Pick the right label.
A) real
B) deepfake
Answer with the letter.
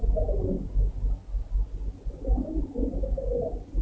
A